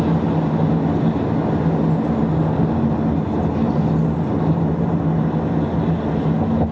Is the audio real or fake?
real